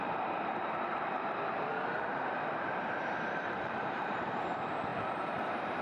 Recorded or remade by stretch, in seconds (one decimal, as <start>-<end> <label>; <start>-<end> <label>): 0.0-5.8 remade